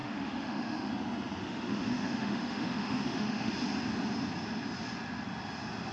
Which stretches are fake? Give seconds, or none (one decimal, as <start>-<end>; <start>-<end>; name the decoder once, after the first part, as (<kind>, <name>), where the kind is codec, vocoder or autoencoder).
0.0-0.9 (autoencoder, DAC-VAE); 1.4-3.5